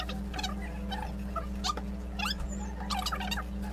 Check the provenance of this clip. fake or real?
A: real